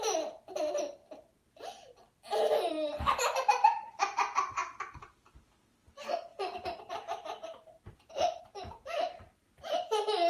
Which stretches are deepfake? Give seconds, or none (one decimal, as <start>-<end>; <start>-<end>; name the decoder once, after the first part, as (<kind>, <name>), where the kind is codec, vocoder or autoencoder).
0.0-1.0 (vocoder, BigVGAN v2); 2.7-4.6; 5.1-10.3